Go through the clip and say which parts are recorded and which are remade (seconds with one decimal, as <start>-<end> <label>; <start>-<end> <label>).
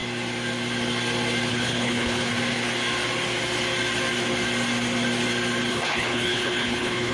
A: 0.0-1.5 recorded; 1.5-2.3 remade; 2.3-5.7 recorded; 5.7-7.1 remade